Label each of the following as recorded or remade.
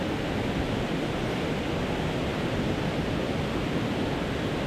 recorded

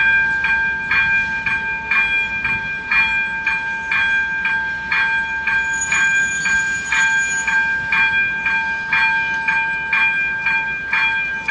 recorded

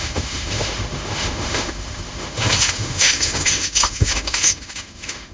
remade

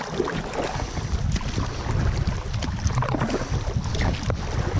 recorded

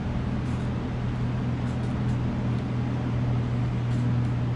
recorded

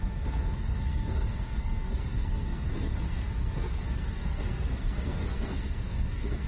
remade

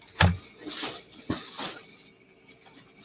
recorded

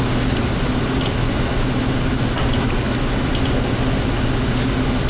recorded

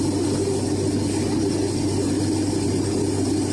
recorded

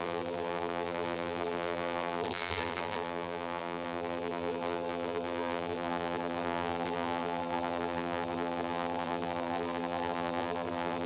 remade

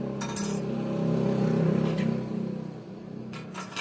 recorded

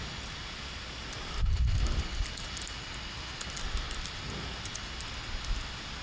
recorded